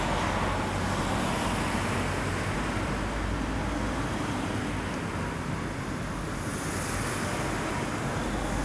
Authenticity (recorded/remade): recorded